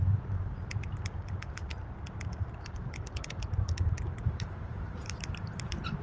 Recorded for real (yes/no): no